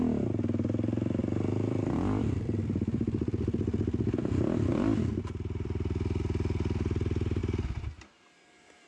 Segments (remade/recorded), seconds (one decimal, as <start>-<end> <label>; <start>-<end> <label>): 0.0-1.2 recorded; 1.2-6.2 remade; 6.2-8.9 recorded